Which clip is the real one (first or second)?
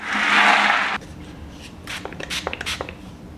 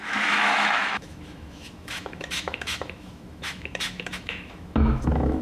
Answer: first